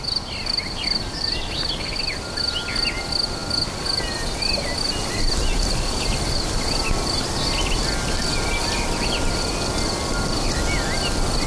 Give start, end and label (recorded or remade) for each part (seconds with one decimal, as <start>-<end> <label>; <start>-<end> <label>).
0.0-11.5 recorded